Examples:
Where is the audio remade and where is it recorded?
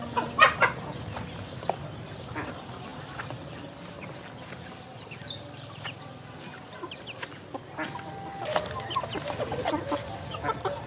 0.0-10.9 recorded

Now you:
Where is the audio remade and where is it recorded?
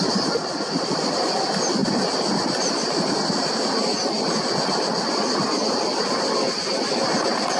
0.0-7.6 recorded